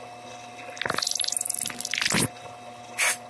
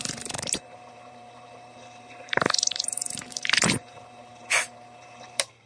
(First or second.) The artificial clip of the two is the second